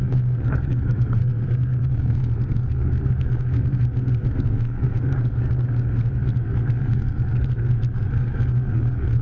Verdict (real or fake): fake